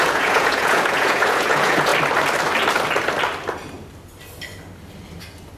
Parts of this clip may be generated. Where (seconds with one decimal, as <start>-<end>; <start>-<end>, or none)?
0.0-1.9